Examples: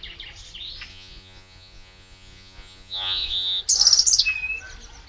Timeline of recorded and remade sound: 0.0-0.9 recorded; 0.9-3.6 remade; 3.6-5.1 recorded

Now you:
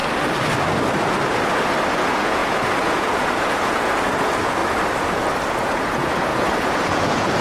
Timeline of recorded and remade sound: 0.0-1.9 recorded; 1.9-4.6 remade; 4.6-5.6 recorded; 5.6-7.4 remade